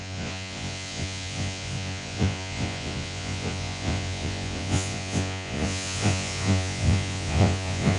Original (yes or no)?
no